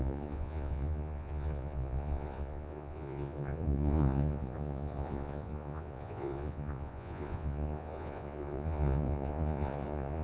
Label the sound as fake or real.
fake